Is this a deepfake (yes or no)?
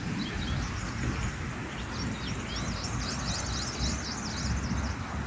no